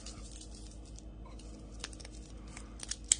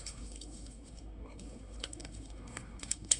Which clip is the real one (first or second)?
first